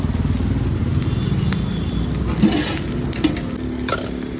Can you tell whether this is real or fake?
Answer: real